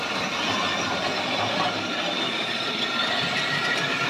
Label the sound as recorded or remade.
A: recorded